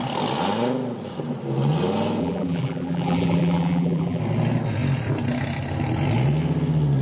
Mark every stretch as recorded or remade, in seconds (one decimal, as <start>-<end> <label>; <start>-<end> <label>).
0.0-2.2 recorded; 2.2-4.2 remade; 4.2-7.0 recorded